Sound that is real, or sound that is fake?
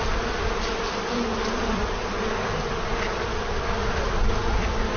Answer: real